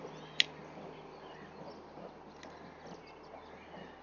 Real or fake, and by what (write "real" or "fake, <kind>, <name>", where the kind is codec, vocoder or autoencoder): real